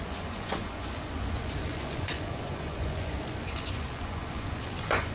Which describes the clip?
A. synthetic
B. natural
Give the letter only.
A